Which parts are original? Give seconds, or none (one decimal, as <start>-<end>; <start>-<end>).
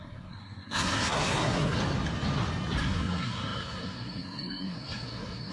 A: 1.8-2.8